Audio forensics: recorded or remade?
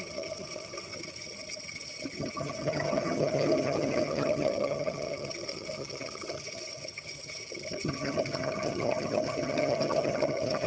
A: remade